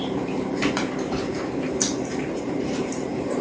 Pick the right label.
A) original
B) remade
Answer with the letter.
B